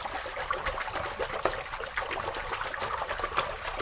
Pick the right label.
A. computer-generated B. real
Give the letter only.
B